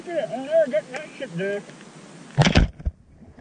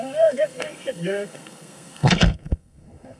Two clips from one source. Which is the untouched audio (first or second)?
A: first